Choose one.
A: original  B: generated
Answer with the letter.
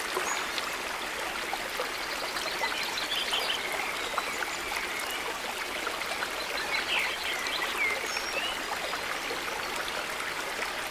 A